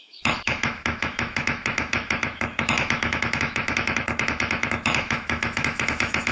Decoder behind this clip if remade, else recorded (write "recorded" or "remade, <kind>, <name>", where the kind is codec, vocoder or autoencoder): remade, autoencoder, DAC-VAE